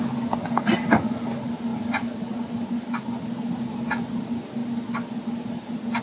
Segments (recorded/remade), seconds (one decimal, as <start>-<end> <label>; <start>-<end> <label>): 0.0-6.0 recorded